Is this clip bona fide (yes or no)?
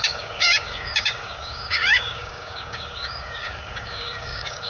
no